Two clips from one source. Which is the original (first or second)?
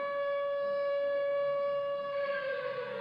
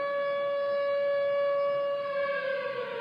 second